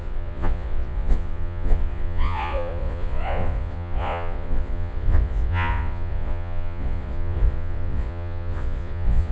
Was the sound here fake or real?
fake